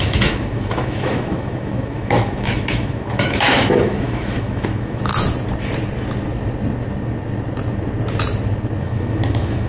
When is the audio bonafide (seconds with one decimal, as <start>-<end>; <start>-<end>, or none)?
5.1-8.8